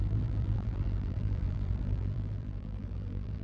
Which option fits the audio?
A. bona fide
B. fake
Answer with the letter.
B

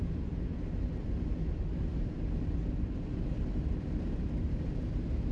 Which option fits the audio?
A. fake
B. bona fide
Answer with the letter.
B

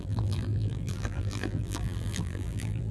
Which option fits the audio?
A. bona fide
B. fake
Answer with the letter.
B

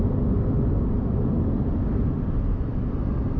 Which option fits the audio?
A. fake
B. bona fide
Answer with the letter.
B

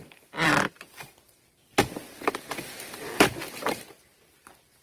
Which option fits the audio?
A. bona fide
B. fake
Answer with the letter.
B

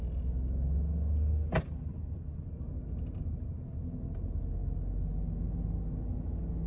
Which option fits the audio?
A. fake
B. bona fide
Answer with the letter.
B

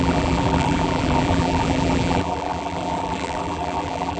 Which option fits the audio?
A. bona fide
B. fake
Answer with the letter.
B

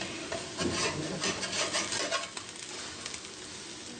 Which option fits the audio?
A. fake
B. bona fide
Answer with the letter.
B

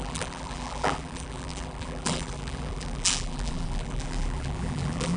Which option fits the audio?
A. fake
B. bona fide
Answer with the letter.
A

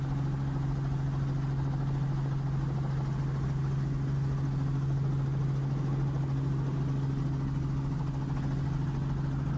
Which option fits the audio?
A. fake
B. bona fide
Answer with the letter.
B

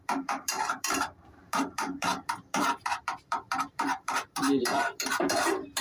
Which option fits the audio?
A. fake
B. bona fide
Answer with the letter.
A